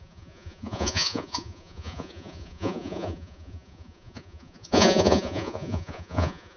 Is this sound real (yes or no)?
no